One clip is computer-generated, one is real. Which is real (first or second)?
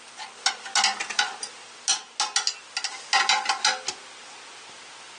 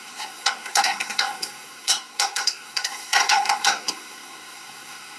first